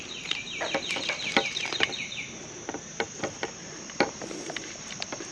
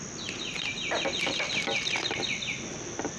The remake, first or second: first